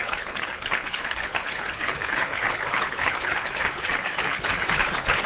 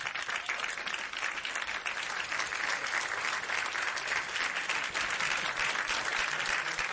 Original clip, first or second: second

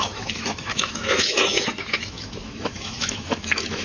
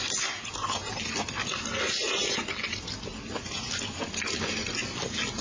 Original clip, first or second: second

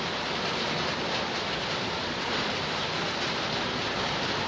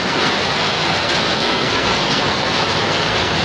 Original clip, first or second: first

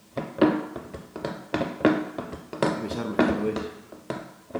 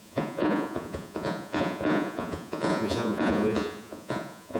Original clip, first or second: first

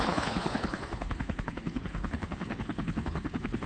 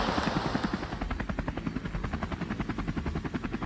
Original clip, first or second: second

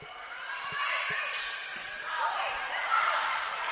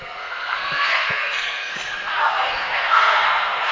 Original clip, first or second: first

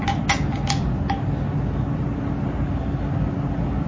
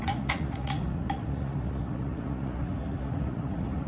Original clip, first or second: first